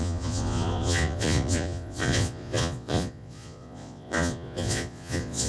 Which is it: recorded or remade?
remade